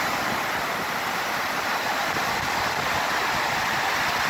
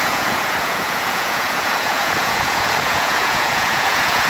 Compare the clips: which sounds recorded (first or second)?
first